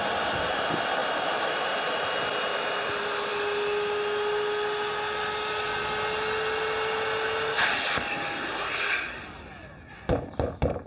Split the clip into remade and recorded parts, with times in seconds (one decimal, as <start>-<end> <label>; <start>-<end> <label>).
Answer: 0.0-1.0 recorded; 1.0-1.5 remade; 1.5-10.9 recorded